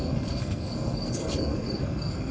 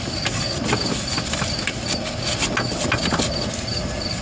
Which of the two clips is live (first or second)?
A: second